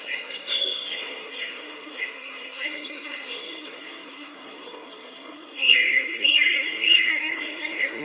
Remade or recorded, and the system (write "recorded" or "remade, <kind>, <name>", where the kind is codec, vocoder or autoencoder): remade, codec, SNAC